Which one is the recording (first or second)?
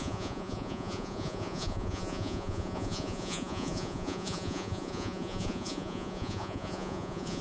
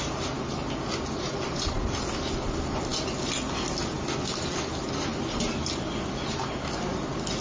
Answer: second